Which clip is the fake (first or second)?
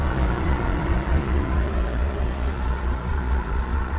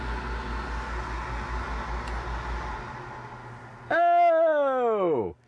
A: first